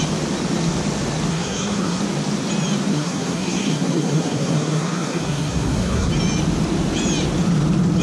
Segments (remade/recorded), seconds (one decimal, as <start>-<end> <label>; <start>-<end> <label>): 0.0-1.3 recorded; 1.3-2.0 remade; 2.0-2.9 recorded; 2.9-6.1 remade; 6.1-8.0 recorded